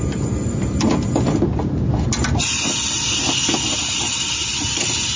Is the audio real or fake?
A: real